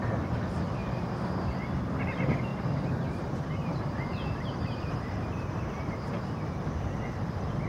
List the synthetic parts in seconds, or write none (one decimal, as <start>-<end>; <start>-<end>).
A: 0.0-0.8; 2.0-7.7